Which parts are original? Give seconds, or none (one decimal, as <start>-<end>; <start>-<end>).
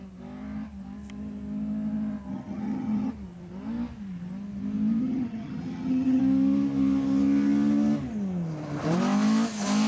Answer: 0.0-2.3; 3.1-5.0; 6.2-9.9